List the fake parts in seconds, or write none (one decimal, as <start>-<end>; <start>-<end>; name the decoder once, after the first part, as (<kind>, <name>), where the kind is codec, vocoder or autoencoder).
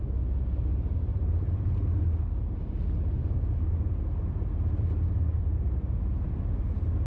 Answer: 1.1-1.7 (vocoder, BigVGAN v2)